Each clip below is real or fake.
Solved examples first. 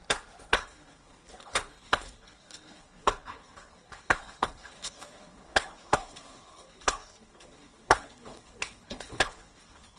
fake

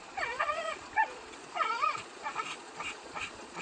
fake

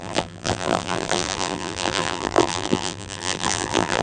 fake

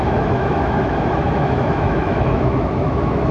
fake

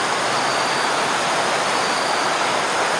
real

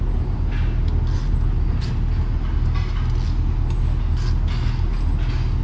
real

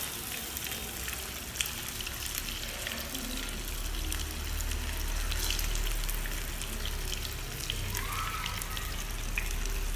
real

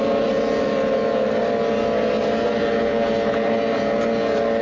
real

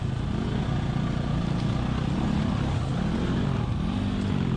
real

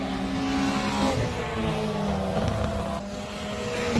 real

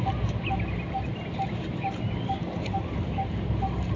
real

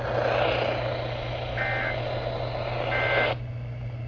real